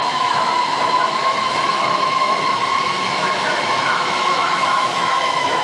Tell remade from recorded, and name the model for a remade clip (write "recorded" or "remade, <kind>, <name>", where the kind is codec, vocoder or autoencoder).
remade, autoencoder, DAC-VAE